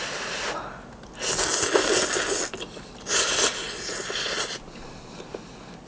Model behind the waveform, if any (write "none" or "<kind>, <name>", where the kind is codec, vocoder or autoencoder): none